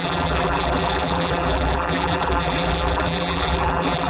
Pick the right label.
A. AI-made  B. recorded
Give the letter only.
A